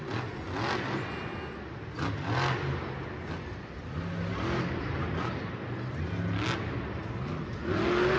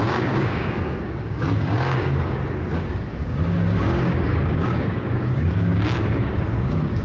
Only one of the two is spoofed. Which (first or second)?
second